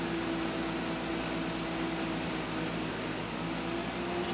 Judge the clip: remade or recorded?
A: recorded